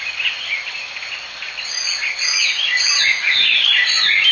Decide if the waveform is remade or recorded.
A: recorded